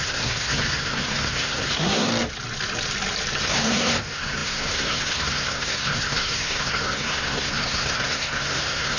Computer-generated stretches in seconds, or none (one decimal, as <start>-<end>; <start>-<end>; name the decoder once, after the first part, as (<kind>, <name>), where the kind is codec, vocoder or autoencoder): 0.0-2.1 (codec, SNAC); 3.4-9.0